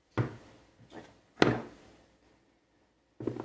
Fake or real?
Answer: real